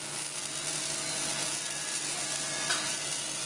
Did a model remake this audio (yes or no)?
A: no